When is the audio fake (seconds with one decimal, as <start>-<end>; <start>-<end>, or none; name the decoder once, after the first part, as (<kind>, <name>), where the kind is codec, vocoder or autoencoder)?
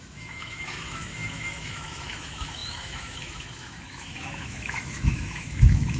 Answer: 0.0-6.0 (autoencoder, DAC-VAE)